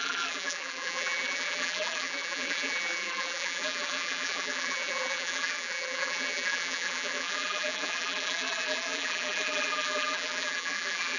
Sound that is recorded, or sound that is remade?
remade